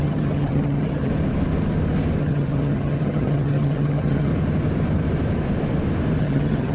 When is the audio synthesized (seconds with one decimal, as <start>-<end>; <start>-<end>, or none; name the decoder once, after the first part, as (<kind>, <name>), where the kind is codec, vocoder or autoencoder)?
0.0-1.1 (vocoder, HiFi-GAN); 2.2-4.3; 6.2-6.7